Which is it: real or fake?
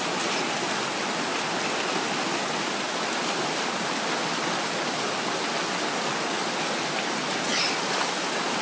real